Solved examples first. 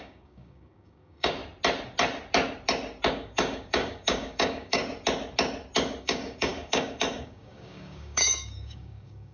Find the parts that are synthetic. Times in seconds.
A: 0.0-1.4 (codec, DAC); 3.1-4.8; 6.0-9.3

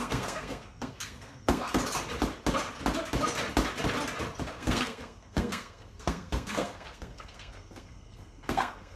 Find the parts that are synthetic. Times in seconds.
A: 0.0-1.8 (codec, SNAC); 4.5-9.0

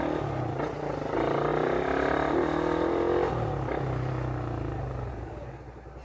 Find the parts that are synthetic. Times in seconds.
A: none

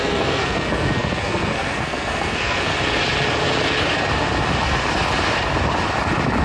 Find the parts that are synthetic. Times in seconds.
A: 0.0-2.7 (codec, SNAC)

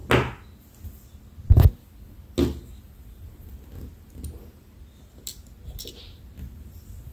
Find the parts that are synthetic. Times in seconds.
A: none

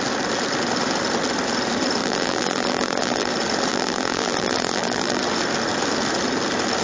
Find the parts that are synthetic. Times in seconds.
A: 2.0-3.3 (vocoder, BigVGAN v2); 3.7-5.2

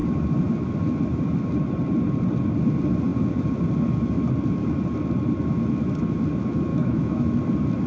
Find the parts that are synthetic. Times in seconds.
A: 6.7-7.3 (autoencoder, DAC-VAE)